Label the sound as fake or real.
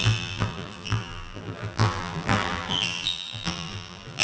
fake